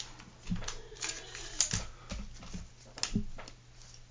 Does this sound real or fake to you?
real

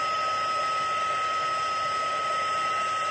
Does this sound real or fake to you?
real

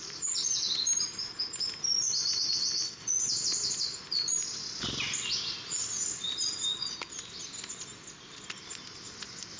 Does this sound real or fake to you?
real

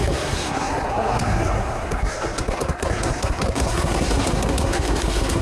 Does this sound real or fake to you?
fake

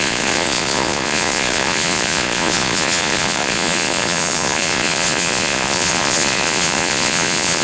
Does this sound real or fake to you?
fake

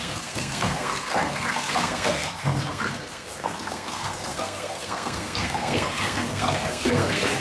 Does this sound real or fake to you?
fake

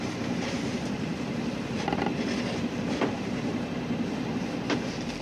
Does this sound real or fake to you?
fake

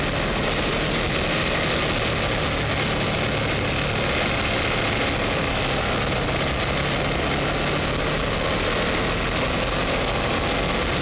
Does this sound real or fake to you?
real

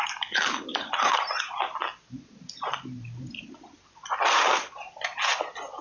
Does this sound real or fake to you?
real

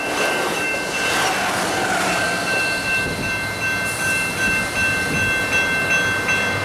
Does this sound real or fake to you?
real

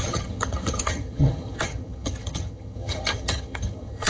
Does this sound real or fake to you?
fake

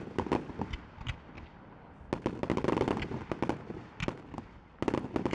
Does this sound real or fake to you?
real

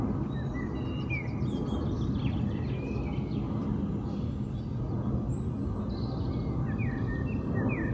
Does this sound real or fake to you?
real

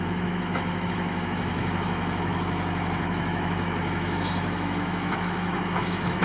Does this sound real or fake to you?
fake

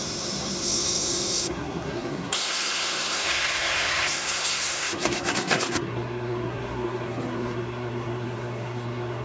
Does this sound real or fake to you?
fake